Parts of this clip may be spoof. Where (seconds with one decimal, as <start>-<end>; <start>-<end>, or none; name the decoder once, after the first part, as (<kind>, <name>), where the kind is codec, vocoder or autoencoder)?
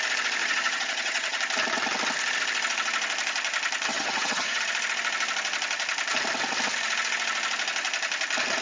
0.4-1.4 (vocoder, HiFi-GAN); 3.9-4.6